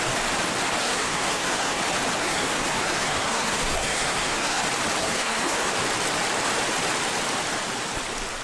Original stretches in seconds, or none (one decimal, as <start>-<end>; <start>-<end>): 0.0-0.8; 1.8-2.2; 4.6-5.0; 5.7-8.4